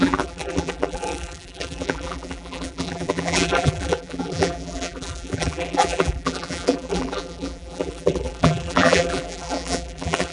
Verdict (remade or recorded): remade